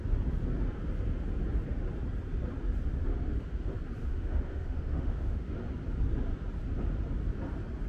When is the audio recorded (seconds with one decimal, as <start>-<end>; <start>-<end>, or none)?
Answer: 0.0-4.0; 5.6-7.9